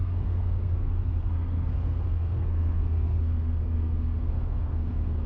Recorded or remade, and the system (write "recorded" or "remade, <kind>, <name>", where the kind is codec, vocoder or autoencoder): remade, codec, SNAC